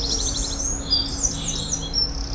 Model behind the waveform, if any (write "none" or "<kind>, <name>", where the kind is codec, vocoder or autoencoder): none